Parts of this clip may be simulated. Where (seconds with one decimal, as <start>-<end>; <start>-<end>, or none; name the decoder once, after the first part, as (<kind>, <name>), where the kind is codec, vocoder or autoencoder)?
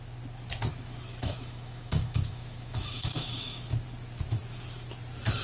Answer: 1.2-3.6 (autoencoder, DAC-VAE)